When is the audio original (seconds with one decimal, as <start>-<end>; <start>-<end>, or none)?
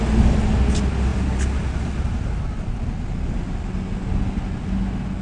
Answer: 0.0-5.2